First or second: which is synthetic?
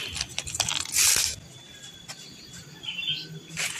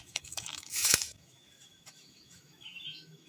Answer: second